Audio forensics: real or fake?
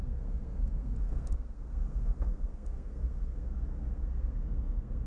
fake